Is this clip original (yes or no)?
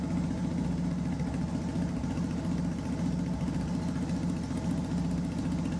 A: yes